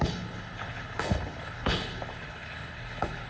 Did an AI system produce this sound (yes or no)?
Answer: yes